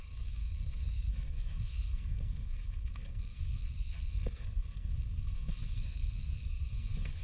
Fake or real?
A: fake